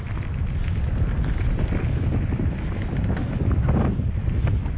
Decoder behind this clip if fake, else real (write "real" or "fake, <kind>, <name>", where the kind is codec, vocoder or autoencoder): real